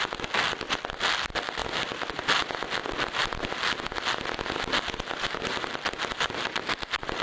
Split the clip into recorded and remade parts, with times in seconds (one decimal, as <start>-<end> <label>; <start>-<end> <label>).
0.0-7.2 recorded